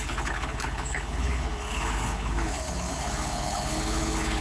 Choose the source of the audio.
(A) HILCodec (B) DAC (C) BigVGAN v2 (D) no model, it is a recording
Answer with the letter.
A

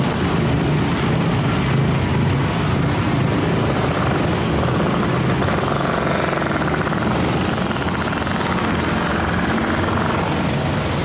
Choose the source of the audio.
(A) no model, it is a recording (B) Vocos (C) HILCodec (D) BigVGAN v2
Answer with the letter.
A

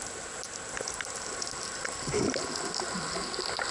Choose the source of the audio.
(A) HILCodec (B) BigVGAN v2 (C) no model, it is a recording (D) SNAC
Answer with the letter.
C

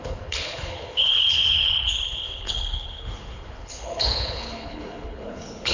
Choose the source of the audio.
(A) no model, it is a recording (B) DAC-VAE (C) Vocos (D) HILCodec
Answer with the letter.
D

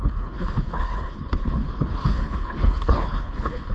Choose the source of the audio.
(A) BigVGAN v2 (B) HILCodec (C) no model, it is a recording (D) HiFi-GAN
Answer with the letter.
B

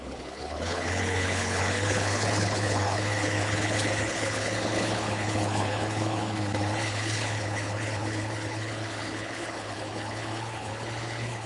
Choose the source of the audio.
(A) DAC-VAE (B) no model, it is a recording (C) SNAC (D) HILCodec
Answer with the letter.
D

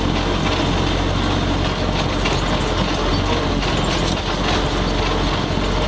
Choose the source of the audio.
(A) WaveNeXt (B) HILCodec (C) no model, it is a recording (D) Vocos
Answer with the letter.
C